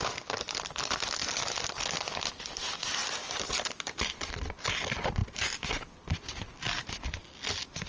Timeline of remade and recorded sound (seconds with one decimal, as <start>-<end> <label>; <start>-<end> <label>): 0.0-3.0 recorded; 3.0-4.3 remade; 4.3-5.2 recorded; 5.2-5.7 remade; 5.7-7.9 recorded